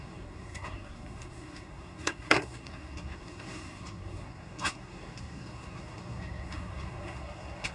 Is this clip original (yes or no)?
no